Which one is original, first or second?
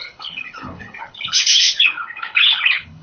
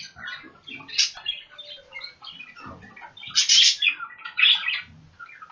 second